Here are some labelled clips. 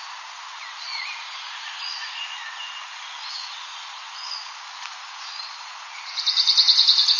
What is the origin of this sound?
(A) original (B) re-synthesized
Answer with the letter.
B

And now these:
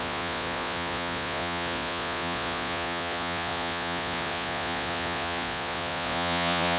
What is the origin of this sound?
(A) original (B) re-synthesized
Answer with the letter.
B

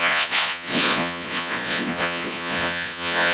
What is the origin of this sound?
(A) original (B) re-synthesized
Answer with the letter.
B